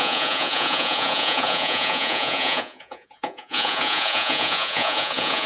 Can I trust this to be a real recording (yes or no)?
no